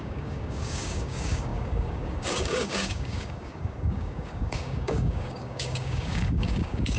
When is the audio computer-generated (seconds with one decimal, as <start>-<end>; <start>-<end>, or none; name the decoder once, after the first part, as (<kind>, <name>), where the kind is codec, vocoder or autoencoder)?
0.0-7.0 (codec, DAC)